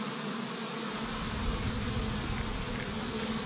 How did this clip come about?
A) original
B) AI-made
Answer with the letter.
A